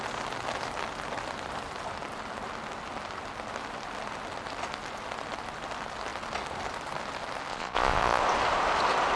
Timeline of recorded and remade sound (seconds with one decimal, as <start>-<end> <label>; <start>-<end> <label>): 0.0-7.5 recorded; 7.5-8.2 remade; 8.2-9.2 recorded